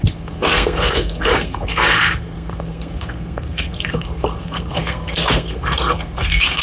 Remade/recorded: remade